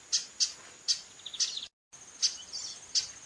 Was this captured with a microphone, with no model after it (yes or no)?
yes